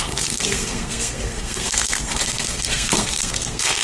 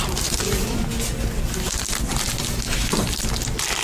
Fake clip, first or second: first